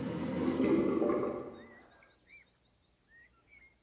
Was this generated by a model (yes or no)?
no